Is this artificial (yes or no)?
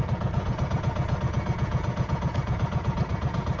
yes